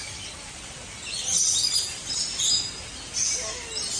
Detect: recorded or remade recorded